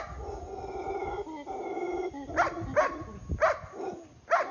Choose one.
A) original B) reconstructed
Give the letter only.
A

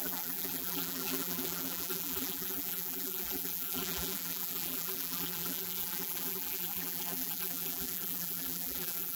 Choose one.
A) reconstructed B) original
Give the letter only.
A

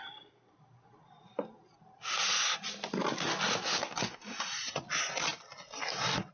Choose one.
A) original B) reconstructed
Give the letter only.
A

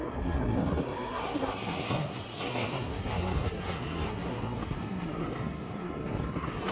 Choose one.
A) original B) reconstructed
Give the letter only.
B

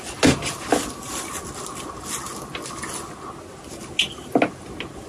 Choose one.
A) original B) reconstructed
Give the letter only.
A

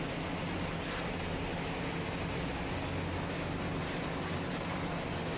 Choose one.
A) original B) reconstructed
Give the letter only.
A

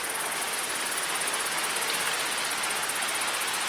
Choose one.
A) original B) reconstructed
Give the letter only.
A